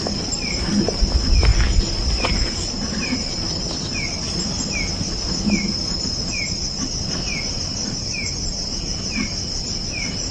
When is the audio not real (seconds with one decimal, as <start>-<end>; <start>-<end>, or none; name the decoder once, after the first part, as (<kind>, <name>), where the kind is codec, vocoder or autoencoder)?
none